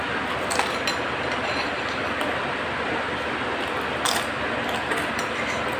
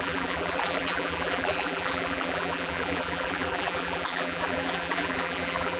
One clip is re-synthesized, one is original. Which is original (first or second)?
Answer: first